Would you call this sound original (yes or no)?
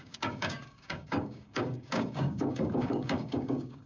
no